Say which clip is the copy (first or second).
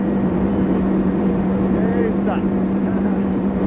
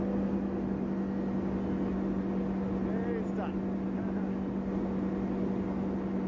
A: first